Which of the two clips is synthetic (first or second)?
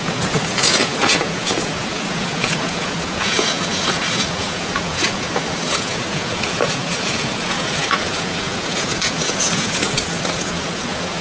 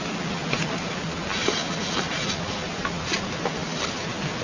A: first